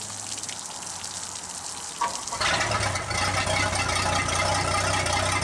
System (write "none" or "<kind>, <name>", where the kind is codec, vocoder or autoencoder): none